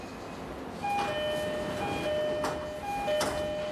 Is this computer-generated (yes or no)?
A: no